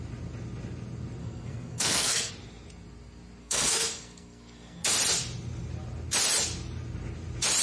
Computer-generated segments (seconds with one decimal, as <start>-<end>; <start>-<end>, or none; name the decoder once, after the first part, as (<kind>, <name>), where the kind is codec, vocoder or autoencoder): 1.2-2.3 (codec, SNAC); 3.4-4.9